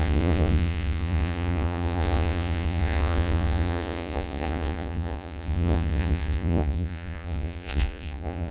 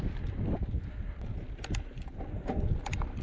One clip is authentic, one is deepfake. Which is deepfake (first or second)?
first